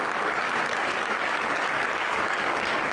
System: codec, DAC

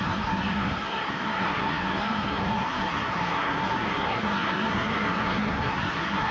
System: codec, SNAC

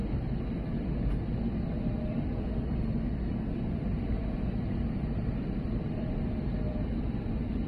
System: none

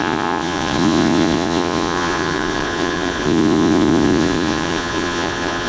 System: vocoder, Vocos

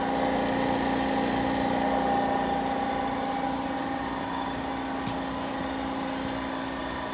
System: none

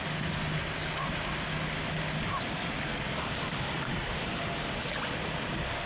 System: none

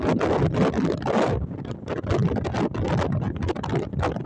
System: none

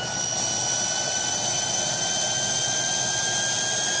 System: none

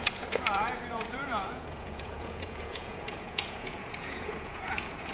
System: vocoder, Vocos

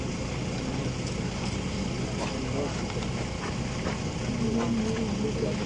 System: none